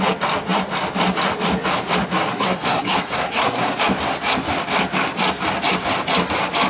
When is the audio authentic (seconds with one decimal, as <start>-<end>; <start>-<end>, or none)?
0.0-2.3; 3.8-6.7